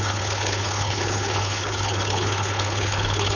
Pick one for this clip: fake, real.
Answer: fake